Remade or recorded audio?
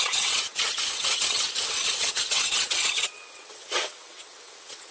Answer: remade